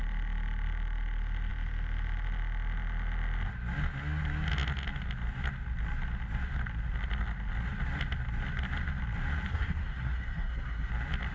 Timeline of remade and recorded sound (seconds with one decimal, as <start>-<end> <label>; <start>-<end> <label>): 0.0-9.5 recorded; 9.5-10.9 remade; 10.9-11.3 recorded